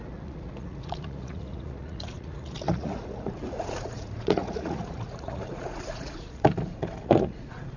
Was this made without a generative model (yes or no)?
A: no